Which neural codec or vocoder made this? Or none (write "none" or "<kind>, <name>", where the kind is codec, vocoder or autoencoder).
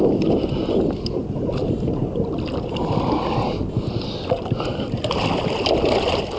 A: none